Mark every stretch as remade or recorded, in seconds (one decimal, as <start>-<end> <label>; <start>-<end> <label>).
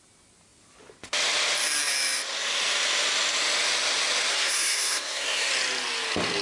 0.0-4.3 recorded; 4.3-5.5 remade; 5.5-6.4 recorded